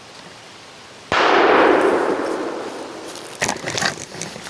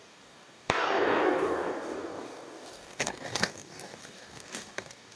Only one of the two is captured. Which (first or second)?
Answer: first